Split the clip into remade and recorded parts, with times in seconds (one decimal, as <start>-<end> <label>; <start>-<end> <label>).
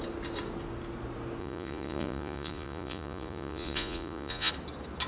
0.0-1.4 recorded; 1.4-4.5 remade; 4.5-5.1 recorded